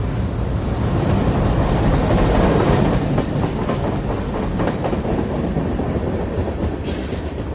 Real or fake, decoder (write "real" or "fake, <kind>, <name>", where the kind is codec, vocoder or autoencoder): real